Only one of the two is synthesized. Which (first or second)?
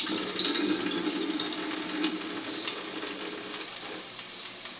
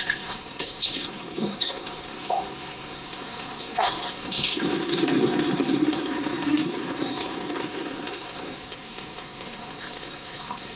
second